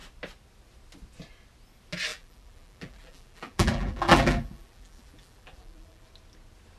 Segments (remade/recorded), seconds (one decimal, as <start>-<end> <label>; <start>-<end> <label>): 0.0-2.1 recorded; 2.1-6.1 remade; 6.1-6.8 recorded